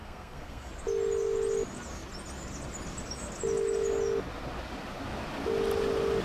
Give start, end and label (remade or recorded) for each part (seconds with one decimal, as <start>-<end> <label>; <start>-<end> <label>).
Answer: 0.0-0.7 remade; 0.7-6.2 recorded

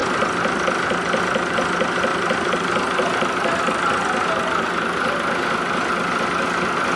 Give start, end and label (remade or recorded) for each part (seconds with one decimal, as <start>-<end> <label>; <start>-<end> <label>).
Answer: 0.0-7.0 recorded

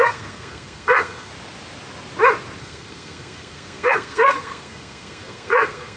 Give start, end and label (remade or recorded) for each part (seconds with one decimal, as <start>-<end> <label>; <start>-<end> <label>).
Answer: 0.0-1.3 remade; 1.3-2.6 recorded; 2.6-6.0 remade

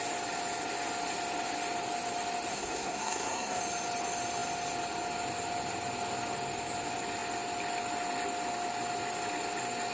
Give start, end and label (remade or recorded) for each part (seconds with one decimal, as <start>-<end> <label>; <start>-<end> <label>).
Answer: 0.0-2.5 recorded; 2.5-3.6 remade; 3.6-9.9 recorded

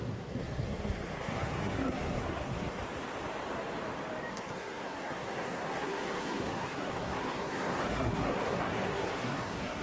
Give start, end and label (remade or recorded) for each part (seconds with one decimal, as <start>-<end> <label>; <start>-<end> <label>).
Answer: 0.0-2.8 remade; 2.8-4.3 recorded; 4.3-9.8 remade

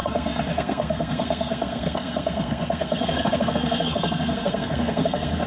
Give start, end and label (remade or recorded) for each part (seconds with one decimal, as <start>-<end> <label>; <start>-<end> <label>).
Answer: 0.0-5.5 remade

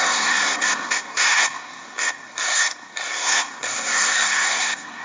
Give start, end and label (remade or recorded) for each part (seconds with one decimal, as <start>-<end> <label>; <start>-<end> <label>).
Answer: 0.0-5.0 remade

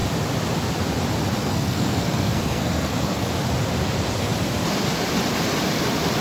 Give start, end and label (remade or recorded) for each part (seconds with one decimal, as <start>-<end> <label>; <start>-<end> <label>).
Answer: 0.0-1.4 recorded; 1.4-3.3 remade; 3.3-6.2 recorded